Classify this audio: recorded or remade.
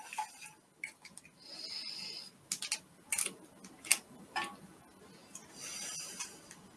recorded